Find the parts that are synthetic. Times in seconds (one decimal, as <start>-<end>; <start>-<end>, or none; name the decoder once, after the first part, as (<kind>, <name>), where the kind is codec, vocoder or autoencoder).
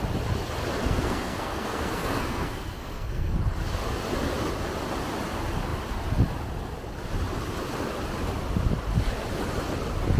0.8-3.4 (codec, SNAC)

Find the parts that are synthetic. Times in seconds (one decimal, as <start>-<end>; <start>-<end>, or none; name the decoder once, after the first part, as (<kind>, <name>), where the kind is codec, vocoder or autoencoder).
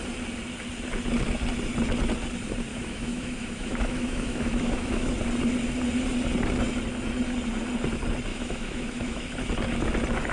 2.7-5.1 (autoencoder, DAC-VAE); 8.3-9.3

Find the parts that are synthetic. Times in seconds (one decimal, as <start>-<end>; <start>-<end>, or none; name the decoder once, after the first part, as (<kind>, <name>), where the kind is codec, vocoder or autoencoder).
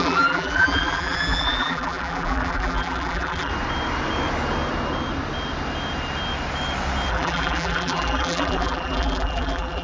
0.0-3.5 (vocoder, BigVGAN v2); 7.1-9.8